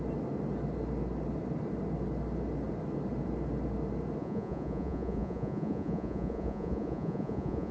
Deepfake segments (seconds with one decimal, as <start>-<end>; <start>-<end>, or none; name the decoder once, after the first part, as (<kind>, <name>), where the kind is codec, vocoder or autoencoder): 4.2-7.7 (vocoder, Vocos)